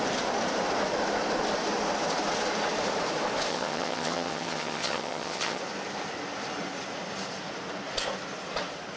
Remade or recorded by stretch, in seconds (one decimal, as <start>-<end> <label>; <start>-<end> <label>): 0.0-3.5 recorded; 3.5-5.6 remade; 5.6-9.0 recorded